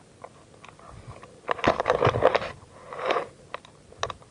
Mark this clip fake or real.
real